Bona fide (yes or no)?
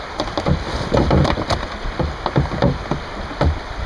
yes